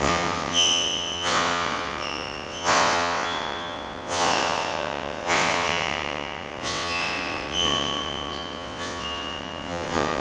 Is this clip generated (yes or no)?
yes